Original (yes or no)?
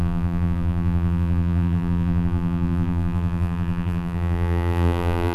no